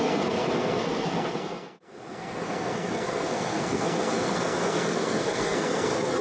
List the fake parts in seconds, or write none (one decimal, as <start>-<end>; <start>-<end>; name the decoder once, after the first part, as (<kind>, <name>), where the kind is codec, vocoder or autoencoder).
0.0-6.2 (codec, SNAC)